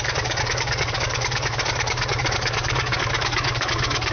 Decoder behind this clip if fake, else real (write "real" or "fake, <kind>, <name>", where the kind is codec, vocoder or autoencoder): fake, codec, DAC